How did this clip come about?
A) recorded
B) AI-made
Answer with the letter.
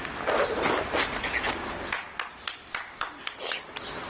B